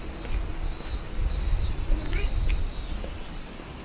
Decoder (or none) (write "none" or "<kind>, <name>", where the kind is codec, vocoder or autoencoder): none